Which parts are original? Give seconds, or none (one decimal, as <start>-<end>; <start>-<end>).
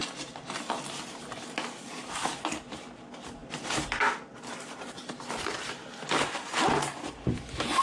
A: 0.0-7.8